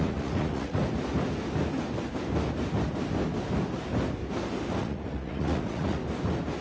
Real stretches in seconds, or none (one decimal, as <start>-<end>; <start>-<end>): 0.8-4.8; 6.0-6.6